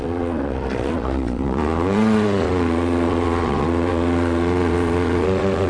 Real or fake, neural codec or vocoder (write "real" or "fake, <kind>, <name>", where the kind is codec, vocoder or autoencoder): fake, vocoder, Vocos